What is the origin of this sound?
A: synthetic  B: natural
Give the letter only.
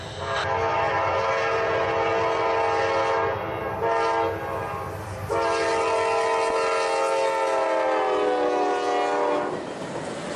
B